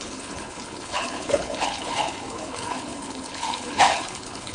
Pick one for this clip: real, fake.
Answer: fake